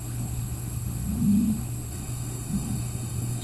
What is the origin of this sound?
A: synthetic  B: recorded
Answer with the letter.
A